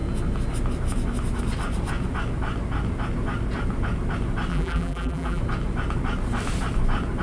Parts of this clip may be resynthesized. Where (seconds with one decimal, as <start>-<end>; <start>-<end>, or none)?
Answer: 4.5-5.4